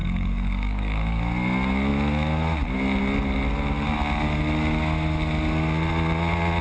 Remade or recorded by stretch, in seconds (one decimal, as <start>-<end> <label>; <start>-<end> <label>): 0.0-1.2 remade; 1.2-6.6 recorded